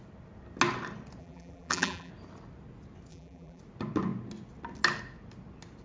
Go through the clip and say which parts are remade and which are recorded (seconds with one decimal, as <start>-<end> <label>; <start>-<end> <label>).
0.0-1.2 recorded; 1.2-2.1 remade; 2.1-3.1 recorded; 3.1-3.6 remade; 3.6-5.8 recorded